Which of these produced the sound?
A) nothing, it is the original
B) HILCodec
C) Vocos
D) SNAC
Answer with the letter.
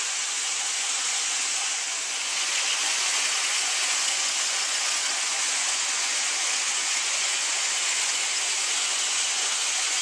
C